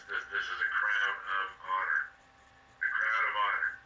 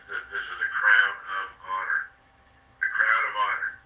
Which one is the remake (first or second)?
second